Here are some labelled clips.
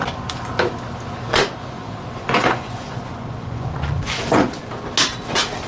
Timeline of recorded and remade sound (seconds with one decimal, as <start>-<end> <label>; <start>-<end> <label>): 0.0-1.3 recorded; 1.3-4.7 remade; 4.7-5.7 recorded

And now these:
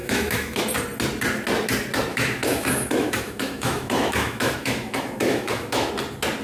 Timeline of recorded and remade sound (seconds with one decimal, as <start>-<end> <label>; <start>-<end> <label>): 0.0-0.6 remade; 0.6-2.1 recorded; 2.1-5.9 remade; 5.9-6.4 recorded

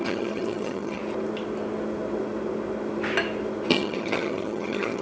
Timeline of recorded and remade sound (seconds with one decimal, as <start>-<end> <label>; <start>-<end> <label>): 0.0-1.0 remade; 1.0-3.7 recorded; 3.7-5.0 remade